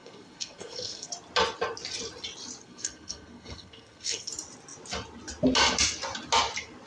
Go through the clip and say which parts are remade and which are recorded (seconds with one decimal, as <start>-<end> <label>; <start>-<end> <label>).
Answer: 0.0-1.1 remade; 1.1-2.6 recorded; 2.6-4.3 remade; 4.3-6.9 recorded